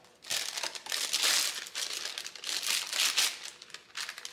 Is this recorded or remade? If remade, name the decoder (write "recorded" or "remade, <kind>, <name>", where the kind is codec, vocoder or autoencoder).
recorded